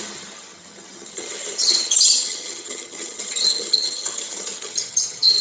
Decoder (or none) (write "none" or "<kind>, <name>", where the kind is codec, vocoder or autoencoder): vocoder, HiFi-GAN